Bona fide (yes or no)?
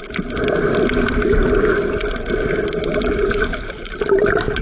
yes